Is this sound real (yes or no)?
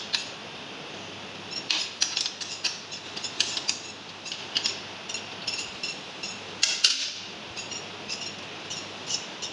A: no